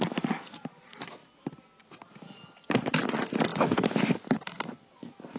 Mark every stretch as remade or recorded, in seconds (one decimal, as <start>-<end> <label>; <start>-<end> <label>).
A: 0.0-5.4 recorded